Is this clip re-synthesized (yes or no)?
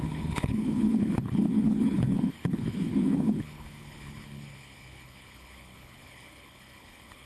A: yes